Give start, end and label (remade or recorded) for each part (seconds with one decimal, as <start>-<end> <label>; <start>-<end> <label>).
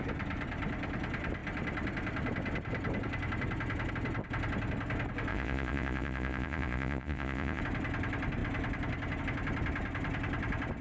0.0-5.3 recorded; 5.3-7.6 remade; 7.6-10.8 recorded